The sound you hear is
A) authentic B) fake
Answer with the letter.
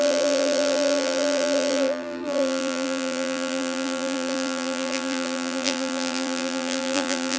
B